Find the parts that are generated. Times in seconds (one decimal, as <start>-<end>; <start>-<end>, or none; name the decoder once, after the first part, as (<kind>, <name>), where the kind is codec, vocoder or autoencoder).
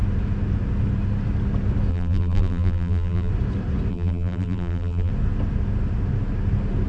1.9-3.3 (vocoder, BigVGAN v2); 3.9-5.1